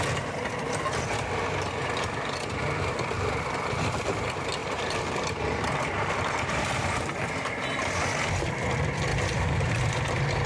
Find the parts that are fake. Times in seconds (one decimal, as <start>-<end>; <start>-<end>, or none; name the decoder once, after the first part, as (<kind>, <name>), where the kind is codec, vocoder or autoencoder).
4.6-5.9 (vocoder, BigVGAN v2); 9.1-9.8